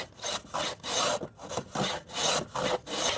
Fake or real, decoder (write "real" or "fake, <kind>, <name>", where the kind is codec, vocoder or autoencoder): fake, vocoder, BigVGAN v2